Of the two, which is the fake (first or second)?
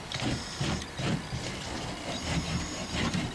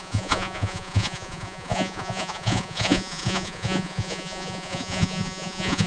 second